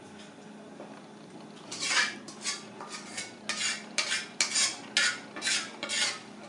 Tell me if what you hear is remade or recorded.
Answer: recorded